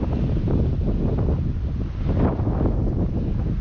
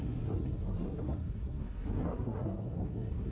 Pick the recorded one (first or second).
first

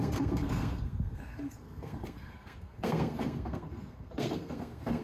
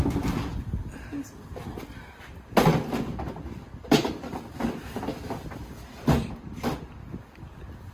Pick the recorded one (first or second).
second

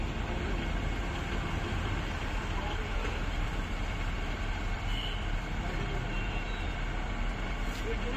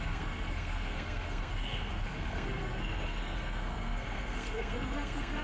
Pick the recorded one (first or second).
first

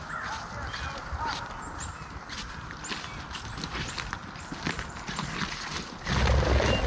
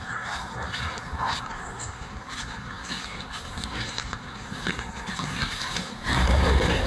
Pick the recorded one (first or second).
first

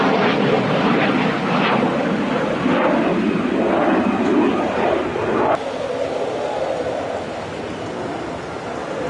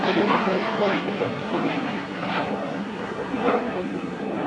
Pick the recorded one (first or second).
first